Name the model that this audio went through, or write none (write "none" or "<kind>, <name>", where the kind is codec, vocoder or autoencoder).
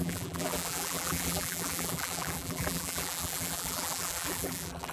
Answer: vocoder, BigVGAN v2